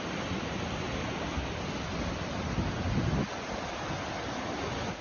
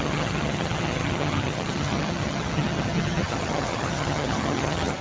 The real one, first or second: first